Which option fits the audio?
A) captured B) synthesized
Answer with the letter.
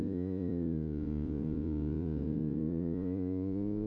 B